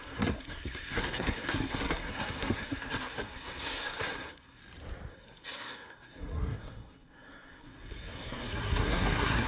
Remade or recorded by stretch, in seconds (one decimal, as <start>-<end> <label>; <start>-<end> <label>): 0.0-4.6 remade; 4.6-5.1 recorded; 5.1-9.5 remade